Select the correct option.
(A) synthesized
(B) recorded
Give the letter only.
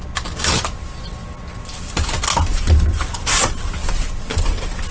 B